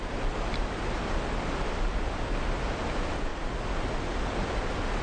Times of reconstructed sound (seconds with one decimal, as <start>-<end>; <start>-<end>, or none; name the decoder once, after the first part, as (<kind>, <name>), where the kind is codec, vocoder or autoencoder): none